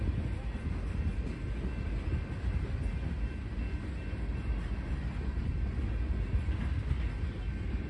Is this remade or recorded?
recorded